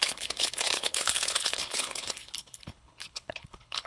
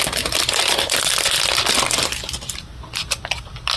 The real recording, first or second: second